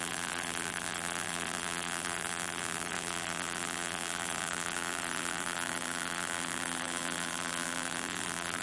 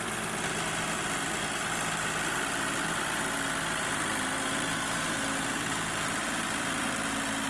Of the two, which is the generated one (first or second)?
first